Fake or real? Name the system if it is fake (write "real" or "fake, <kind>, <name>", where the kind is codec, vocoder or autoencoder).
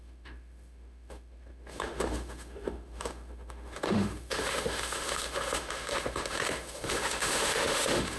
fake, autoencoder, DAC-VAE